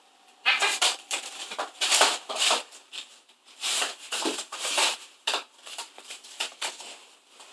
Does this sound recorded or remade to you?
remade